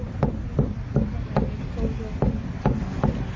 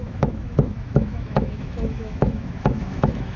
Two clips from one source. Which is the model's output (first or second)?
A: second